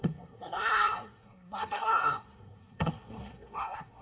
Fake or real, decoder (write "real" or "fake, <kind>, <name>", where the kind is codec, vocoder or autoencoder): fake, codec, SNAC